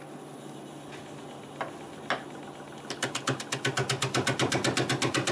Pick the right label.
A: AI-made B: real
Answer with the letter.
B